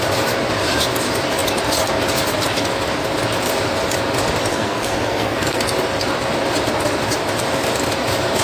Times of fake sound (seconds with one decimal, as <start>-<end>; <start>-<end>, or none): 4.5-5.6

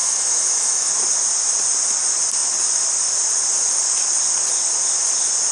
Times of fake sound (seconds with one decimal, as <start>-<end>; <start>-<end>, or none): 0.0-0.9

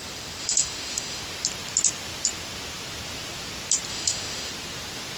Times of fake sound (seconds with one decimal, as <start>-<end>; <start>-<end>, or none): 0.0-1.2; 3.9-4.5

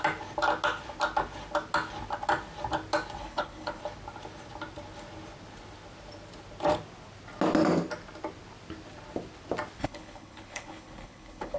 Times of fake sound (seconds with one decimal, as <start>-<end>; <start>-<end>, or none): 3.2-3.8; 9.8-11.6

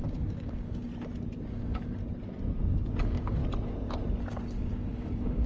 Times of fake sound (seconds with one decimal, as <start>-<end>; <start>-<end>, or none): 0.0-0.9; 1.5-2.0; 3.0-3.4; 4.2-5.5